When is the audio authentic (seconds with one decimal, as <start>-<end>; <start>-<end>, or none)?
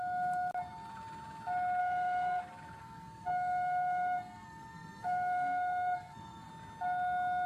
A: 0.0-1.8; 2.4-2.8; 6.5-7.5